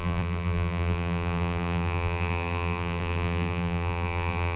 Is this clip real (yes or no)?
no